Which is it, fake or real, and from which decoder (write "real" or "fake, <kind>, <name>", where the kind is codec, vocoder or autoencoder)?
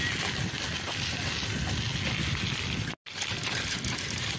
real